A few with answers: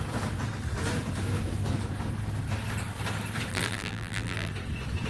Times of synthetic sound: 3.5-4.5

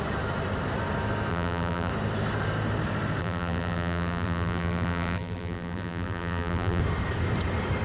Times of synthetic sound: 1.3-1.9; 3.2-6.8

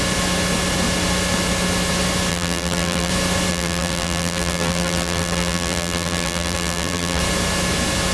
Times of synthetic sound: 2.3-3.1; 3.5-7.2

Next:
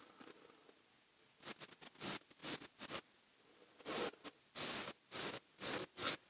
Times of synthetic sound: none

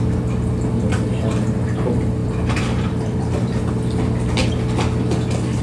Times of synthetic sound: 2.2-3.7

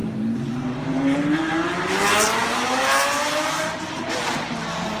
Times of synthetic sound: 0.0-1.5; 2.4-4.3

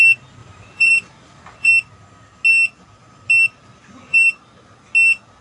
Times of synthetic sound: 0.4-1.7; 4.1-4.8